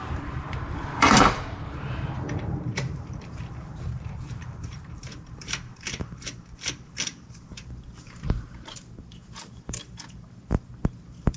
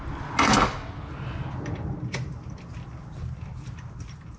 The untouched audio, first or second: second